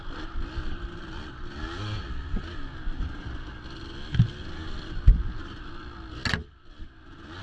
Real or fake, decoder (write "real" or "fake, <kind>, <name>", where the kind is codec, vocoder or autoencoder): real